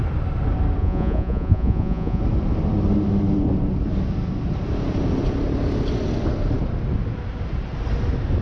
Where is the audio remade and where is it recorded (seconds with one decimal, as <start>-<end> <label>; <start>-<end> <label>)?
0.0-0.8 recorded; 0.8-2.2 remade; 2.2-8.4 recorded